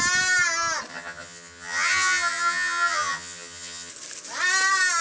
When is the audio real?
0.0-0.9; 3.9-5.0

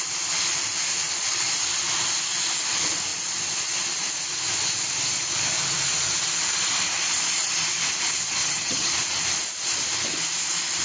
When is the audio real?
0.0-8.4; 8.9-10.8

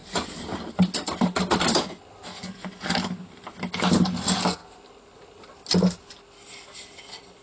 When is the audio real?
0.0-7.4

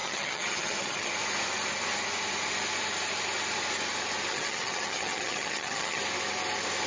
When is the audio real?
1.1-4.3; 6.0-6.9